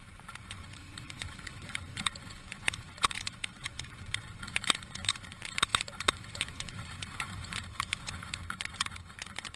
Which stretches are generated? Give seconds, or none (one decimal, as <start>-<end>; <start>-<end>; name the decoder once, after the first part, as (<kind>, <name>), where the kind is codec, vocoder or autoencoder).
0.0-9.6 (vocoder, Vocos)